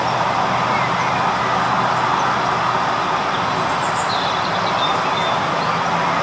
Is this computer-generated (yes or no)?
no